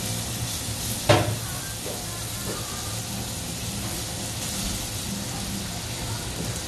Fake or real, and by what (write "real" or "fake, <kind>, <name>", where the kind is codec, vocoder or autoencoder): real